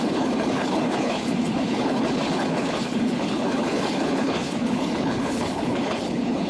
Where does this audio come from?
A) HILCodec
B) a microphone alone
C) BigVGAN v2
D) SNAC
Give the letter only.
A